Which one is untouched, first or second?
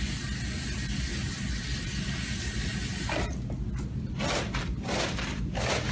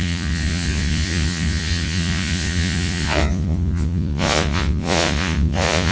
first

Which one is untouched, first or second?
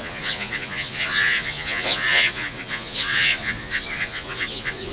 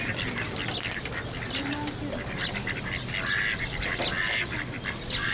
second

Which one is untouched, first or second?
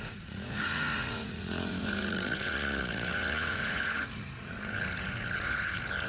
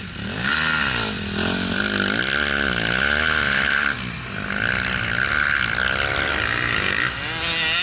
second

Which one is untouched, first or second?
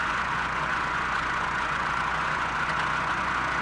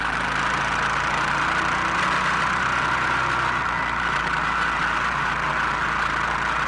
second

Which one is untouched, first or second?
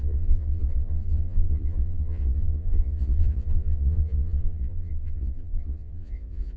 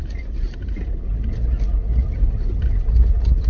second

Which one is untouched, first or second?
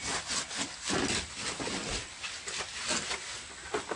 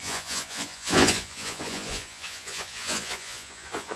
first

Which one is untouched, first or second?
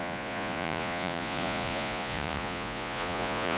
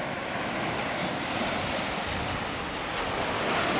second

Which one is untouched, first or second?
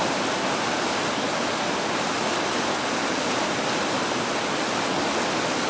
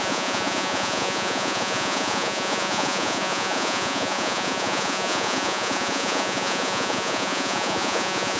first